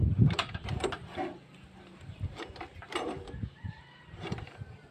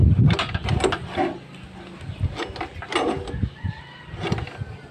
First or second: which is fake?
first